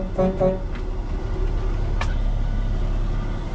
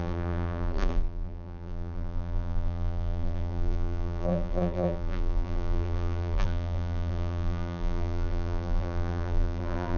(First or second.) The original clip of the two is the first